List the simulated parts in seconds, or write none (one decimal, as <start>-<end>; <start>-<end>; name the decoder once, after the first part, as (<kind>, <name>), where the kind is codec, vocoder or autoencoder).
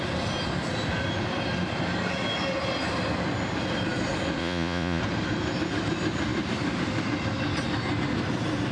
4.4-5.0 (vocoder, Vocos)